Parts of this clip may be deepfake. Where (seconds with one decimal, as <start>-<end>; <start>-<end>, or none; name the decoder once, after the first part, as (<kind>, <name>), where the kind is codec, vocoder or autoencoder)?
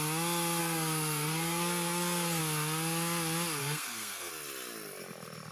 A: 0.6-2.4 (codec, SNAC); 3.6-4.3